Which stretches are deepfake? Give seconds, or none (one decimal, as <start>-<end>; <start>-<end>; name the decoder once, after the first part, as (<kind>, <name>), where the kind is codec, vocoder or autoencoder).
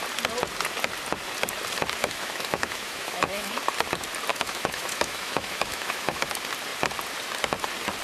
2.0-3.6 (autoencoder, DAC-VAE); 4.3-6.3